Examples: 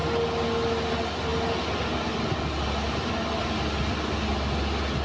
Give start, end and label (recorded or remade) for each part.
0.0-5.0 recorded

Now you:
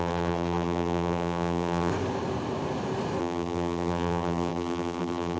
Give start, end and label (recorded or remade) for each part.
0.0-1.9 remade; 1.9-3.2 recorded; 3.2-5.4 remade

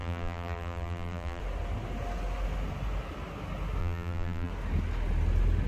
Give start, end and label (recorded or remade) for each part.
0.0-1.4 remade; 1.4-3.8 recorded; 3.8-4.5 remade; 4.5-5.7 recorded

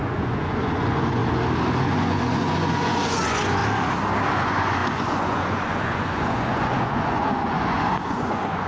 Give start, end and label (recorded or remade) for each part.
0.0-1.2 remade; 1.2-1.8 recorded; 1.8-3.6 remade; 3.6-4.3 recorded; 4.3-8.7 remade

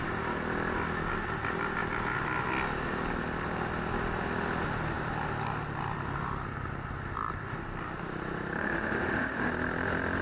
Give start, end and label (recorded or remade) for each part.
0.0-8.6 recorded; 8.6-9.5 remade; 9.5-10.2 recorded

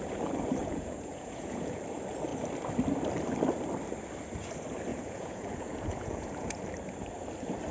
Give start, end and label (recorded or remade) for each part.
0.0-0.6 recorded; 0.6-1.8 remade; 1.8-4.9 recorded; 4.9-6.5 remade; 6.5-7.7 recorded

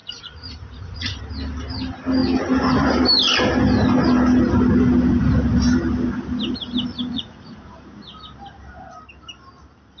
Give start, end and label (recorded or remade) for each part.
0.0-1.2 remade; 1.2-7.1 recorded; 7.1-7.7 remade; 7.7-10.0 recorded